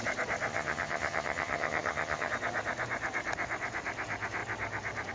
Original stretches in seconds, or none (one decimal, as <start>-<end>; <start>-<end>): 0.0-0.5; 2.3-5.1